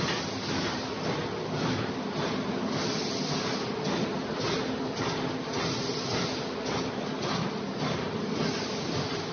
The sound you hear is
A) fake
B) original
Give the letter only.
B